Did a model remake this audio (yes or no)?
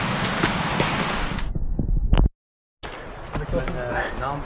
no